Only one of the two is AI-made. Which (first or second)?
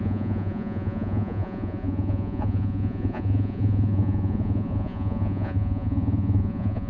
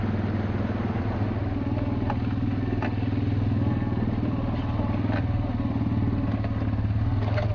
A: first